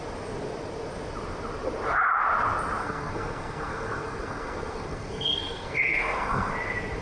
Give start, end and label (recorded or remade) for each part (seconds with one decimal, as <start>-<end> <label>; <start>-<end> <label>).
0.0-2.8 recorded; 2.8-6.5 remade; 6.5-7.0 recorded